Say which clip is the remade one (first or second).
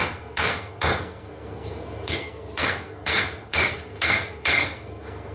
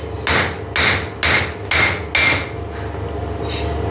first